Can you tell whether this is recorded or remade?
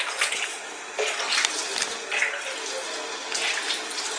recorded